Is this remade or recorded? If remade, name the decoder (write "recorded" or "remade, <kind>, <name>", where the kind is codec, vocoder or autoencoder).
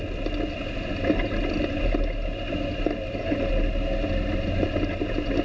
recorded